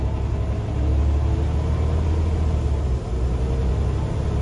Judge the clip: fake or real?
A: real